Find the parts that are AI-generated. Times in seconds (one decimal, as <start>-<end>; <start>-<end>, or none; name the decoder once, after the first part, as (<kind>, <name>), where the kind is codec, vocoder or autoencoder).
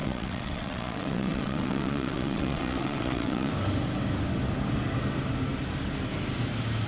0.0-3.5 (vocoder, WaveNeXt)